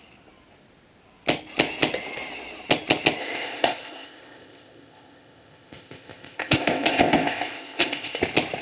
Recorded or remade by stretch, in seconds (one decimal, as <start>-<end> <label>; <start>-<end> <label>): 0.0-3.2 recorded; 3.2-8.2 remade; 8.2-8.6 recorded